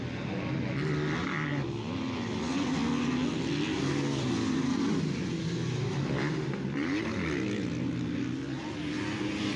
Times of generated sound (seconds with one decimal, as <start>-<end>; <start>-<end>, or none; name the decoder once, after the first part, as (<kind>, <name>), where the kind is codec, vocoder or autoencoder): none